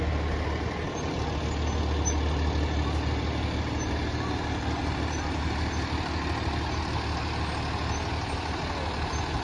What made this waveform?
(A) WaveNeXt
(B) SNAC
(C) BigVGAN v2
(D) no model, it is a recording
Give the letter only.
D